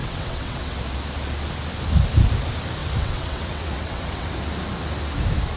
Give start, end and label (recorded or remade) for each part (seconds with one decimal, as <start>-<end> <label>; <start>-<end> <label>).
0.0-0.8 remade; 0.8-2.8 recorded; 2.8-4.4 remade; 4.4-5.6 recorded